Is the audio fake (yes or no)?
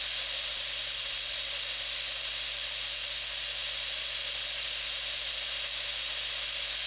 no